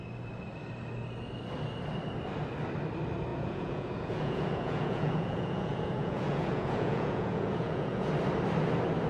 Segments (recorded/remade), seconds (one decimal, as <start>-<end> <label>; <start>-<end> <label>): 0.0-3.3 recorded; 3.3-8.1 remade; 8.1-9.1 recorded